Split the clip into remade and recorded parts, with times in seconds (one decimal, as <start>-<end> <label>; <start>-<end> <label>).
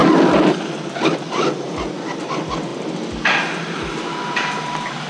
0.0-0.7 remade; 0.7-5.1 recorded